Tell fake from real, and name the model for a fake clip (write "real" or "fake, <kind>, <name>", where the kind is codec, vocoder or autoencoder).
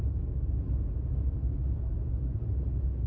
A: real